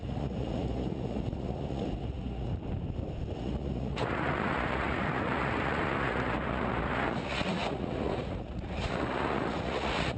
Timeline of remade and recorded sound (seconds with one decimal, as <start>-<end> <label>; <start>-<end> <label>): 0.0-2.5 remade; 2.5-3.3 recorded; 3.3-10.2 remade